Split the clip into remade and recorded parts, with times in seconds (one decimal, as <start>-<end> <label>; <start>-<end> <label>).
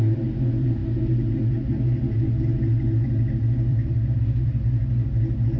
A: 0.0-3.7 recorded; 3.7-4.9 remade; 4.9-5.6 recorded